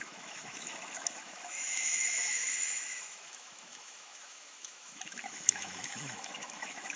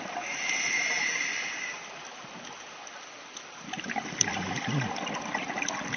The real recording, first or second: second